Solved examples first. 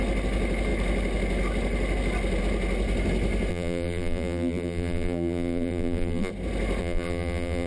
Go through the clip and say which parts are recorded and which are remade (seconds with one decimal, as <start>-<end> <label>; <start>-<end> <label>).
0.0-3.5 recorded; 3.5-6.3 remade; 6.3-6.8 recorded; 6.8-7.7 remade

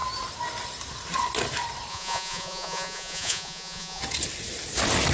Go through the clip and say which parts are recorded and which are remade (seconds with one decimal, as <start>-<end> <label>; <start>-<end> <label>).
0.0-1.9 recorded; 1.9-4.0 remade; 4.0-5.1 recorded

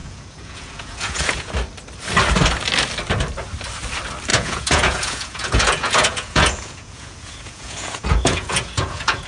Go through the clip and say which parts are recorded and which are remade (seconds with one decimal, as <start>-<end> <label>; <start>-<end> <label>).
0.0-1.5 remade; 1.5-4.3 recorded; 4.3-9.3 remade

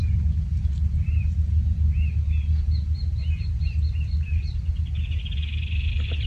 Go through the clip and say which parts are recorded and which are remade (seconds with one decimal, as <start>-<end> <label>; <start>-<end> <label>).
0.0-6.3 recorded